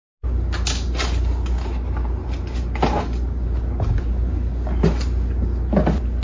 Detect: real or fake real